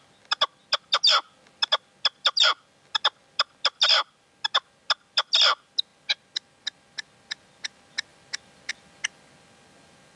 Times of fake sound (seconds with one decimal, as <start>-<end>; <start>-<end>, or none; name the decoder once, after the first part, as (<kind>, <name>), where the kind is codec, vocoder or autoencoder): none